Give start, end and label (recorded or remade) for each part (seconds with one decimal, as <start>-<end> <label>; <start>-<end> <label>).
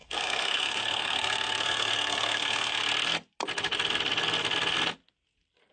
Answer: 0.0-2.8 remade; 2.8-5.7 recorded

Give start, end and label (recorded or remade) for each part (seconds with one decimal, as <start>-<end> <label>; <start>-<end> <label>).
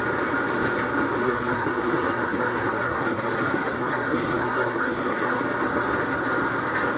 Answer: 0.0-1.2 recorded; 1.2-5.4 remade; 5.4-7.0 recorded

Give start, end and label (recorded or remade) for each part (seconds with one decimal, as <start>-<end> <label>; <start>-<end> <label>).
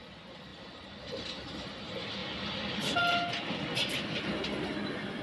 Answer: 0.0-5.2 recorded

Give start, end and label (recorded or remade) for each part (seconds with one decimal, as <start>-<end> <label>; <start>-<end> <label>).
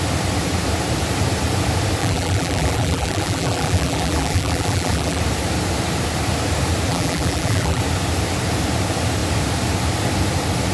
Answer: 0.0-2.0 recorded; 2.0-5.2 remade; 5.2-6.9 recorded; 6.9-7.8 remade; 7.8-10.7 recorded